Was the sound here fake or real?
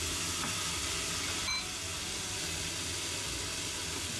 real